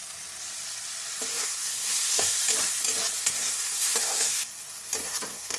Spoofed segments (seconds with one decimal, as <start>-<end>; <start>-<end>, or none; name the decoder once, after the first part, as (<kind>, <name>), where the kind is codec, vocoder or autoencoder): 1.3-2.4 (codec, SNAC); 3.2-4.5; 5.0-5.6